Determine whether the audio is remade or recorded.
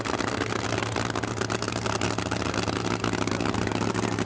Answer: recorded